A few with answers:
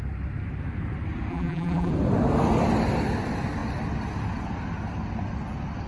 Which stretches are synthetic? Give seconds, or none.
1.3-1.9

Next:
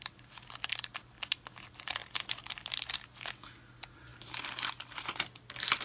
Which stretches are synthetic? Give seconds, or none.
none

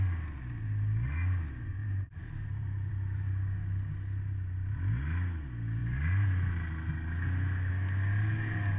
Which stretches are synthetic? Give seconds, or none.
1.8-2.9

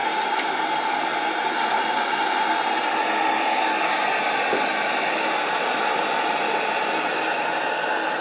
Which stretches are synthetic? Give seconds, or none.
none

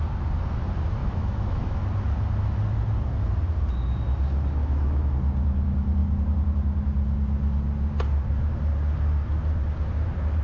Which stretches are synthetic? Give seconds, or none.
1.0-1.8; 4.6-5.1

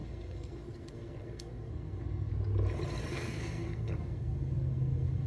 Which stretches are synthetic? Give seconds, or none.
0.0-2.3; 3.1-5.3

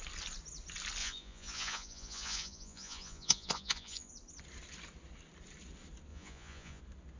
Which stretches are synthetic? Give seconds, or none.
1.0-4.1; 6.1-6.8

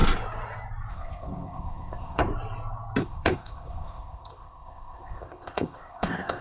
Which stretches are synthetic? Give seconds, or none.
0.9-2.2; 3.0-6.4